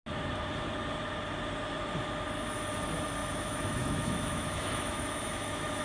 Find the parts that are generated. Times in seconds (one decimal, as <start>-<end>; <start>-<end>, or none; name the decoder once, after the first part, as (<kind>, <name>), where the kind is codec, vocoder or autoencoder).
3.2-5.8 (autoencoder, DAC-VAE)